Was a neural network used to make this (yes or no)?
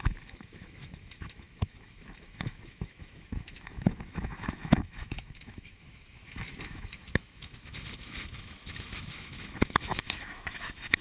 yes